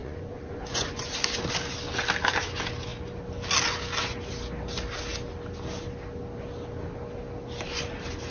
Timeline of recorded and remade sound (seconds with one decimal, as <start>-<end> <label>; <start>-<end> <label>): 0.0-1.1 remade; 1.1-8.3 recorded